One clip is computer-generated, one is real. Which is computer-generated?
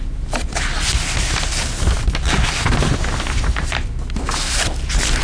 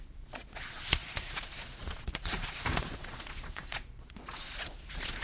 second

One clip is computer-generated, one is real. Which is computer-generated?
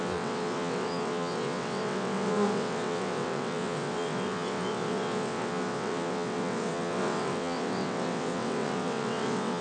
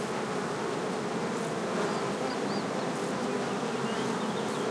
first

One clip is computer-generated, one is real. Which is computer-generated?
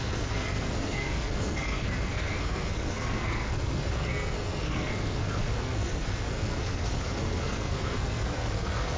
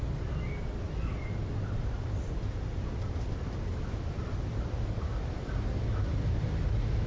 first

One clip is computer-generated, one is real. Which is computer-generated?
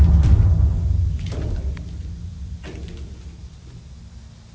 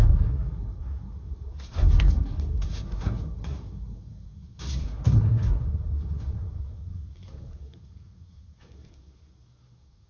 second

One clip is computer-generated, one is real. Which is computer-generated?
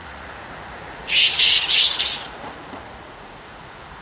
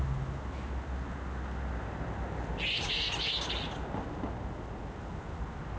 first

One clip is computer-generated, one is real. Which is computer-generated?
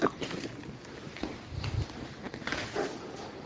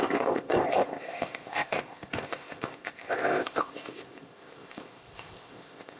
second